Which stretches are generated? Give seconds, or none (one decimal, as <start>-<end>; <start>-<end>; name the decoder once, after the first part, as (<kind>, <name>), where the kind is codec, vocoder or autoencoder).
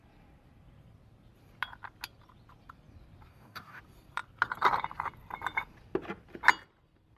3.3-3.8 (codec, DAC)